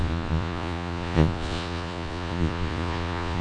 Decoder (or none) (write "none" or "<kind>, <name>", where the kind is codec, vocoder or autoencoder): vocoder, Vocos